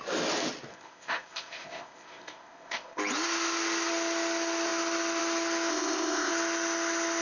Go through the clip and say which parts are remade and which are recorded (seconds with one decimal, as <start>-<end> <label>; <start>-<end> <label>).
0.0-0.7 recorded; 0.7-3.0 remade; 3.0-5.7 recorded; 5.7-6.3 remade; 6.3-7.2 recorded